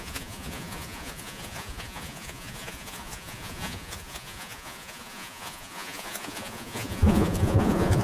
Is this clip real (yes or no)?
no